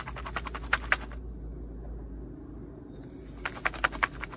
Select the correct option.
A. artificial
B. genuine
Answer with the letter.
B